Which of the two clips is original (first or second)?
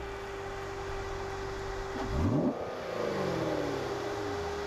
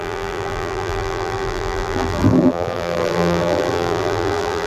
first